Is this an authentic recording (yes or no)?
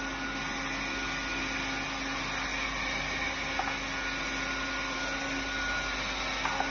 yes